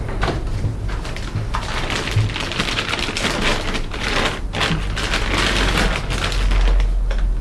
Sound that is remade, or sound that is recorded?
recorded